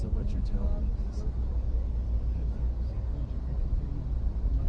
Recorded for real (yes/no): yes